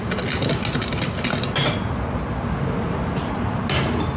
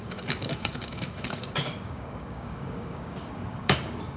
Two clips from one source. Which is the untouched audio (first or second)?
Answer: first